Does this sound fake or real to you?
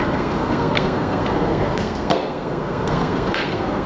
fake